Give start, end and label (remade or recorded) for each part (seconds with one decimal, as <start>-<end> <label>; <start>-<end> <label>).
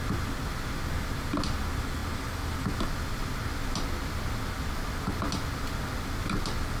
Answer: 0.0-6.8 recorded